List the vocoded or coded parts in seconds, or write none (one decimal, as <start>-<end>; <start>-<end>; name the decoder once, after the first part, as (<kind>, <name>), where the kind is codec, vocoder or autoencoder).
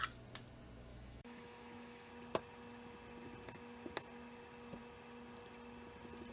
0.9-2.1 (autoencoder, DAC-VAE)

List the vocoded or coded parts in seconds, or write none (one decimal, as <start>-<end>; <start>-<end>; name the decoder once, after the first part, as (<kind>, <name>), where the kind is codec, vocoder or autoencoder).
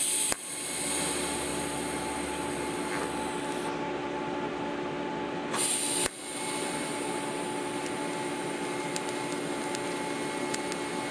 none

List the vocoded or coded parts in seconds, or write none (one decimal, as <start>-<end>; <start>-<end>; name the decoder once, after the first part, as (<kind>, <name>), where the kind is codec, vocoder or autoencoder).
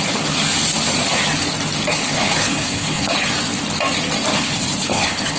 1.9-3.3 (codec, HILCodec); 4.3-5.4